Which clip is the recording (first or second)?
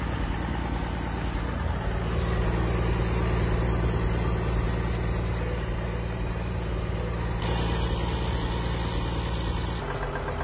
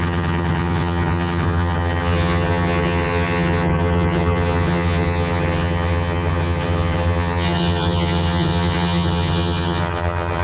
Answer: first